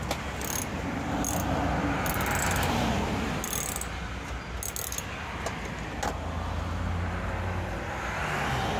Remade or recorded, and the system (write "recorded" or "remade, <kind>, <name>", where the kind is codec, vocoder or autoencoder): recorded